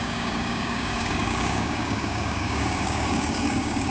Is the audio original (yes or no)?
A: no